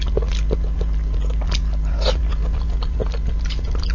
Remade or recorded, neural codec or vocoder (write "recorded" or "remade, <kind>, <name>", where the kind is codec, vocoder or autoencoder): recorded